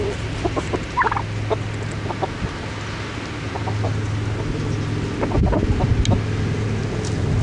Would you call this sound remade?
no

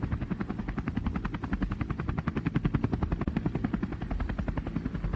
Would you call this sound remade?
no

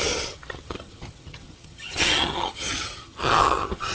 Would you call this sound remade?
yes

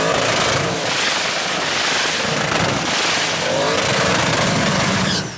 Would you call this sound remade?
no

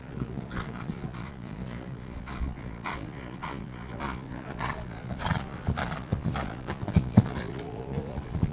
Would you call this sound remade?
yes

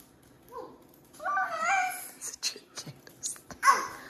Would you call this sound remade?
no